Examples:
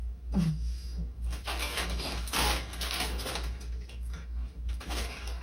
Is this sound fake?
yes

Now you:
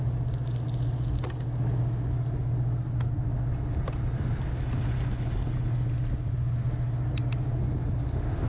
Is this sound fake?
no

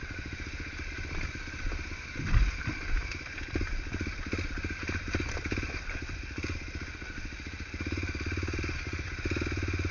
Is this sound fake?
no